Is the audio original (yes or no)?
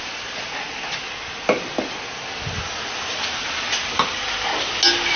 yes